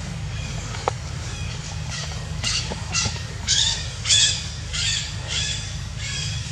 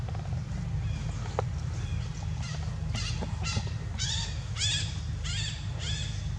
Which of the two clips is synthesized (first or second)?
first